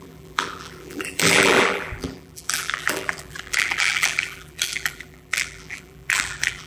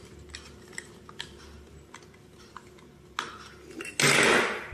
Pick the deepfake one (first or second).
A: first